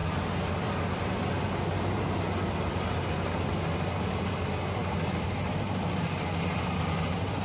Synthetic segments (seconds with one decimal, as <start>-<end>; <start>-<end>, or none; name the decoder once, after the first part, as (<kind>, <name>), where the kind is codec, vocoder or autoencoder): none